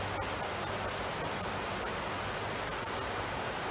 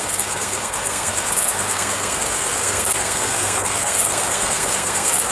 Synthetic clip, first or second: second